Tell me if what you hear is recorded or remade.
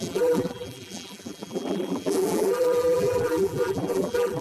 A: remade